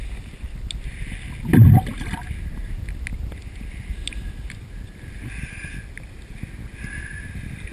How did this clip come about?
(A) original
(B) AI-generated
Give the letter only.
A